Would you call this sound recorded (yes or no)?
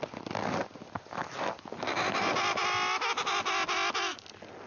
yes